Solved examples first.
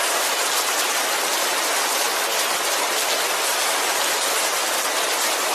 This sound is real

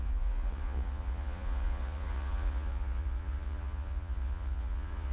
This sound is fake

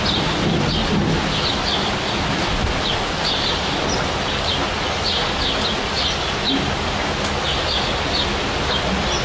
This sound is real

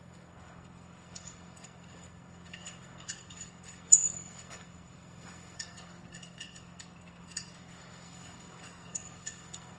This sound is fake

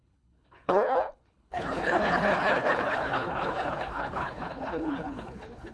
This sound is fake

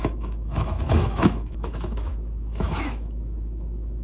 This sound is fake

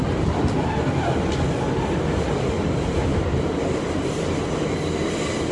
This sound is real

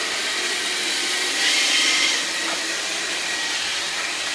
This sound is fake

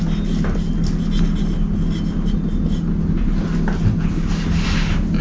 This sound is real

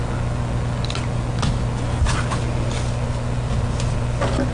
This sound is real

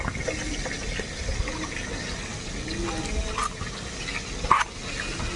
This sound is real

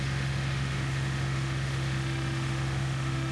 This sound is fake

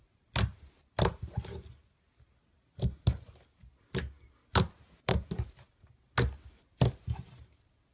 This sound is real